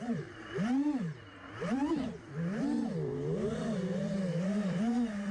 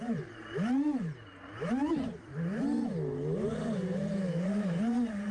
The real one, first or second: second